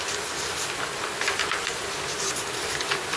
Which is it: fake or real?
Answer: real